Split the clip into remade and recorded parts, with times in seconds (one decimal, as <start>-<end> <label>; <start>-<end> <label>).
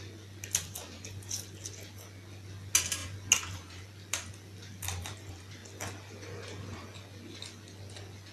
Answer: 0.0-8.3 recorded